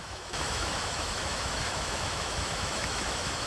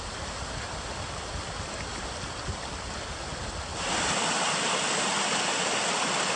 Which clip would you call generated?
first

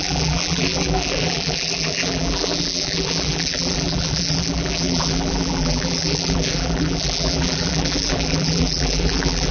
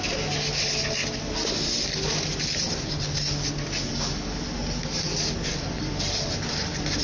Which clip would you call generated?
first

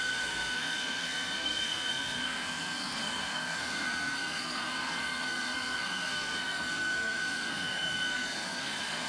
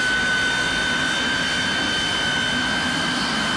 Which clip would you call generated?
first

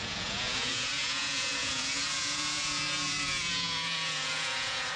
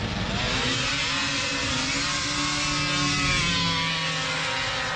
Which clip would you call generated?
first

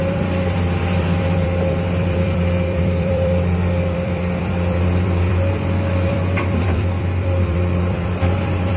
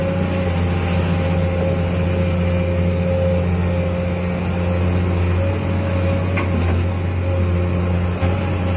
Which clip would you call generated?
first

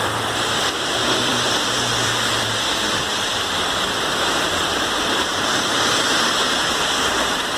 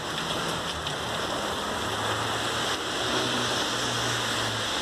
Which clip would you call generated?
first